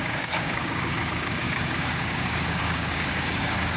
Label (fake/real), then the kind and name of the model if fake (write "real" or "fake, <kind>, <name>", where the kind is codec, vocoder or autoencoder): fake, codec, DAC